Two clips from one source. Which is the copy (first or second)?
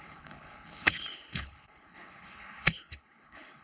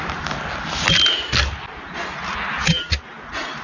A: first